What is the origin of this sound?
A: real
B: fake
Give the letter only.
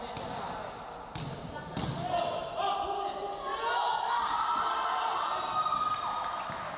A